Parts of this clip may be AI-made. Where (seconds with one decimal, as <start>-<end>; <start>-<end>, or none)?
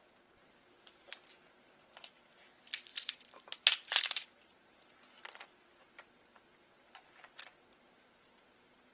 2.9-4.9